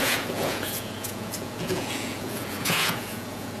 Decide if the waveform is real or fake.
fake